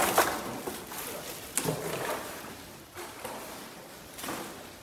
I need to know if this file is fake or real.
fake